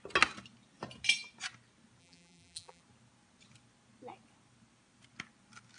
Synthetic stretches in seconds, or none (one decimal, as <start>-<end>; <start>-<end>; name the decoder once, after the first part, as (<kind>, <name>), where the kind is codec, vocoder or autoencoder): 2.0-2.8 (vocoder, BigVGAN v2)